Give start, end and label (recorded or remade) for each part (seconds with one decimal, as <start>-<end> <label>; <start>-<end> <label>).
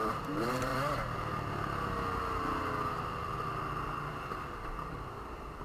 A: 0.0-0.7 remade; 0.7-4.1 recorded; 4.1-5.6 remade